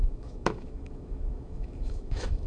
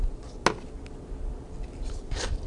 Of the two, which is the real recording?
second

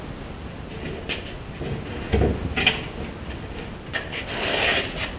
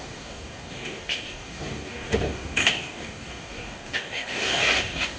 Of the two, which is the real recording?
first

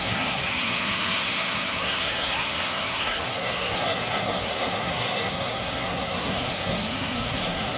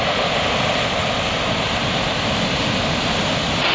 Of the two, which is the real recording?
second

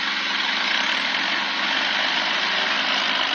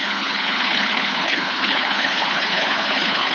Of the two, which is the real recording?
first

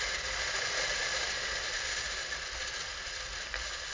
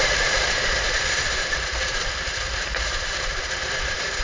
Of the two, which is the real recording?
first